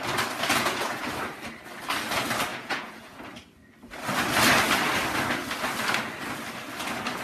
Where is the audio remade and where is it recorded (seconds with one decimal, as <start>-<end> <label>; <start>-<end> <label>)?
0.0-0.5 recorded; 0.5-1.0 remade; 1.0-2.5 recorded; 2.5-3.2 remade; 3.2-7.2 recorded